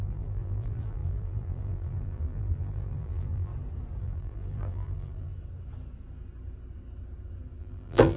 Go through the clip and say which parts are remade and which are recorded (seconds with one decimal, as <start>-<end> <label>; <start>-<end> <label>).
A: 0.0-3.5 remade; 3.5-4.0 recorded; 4.0-5.3 remade; 5.3-7.6 recorded; 7.6-8.2 remade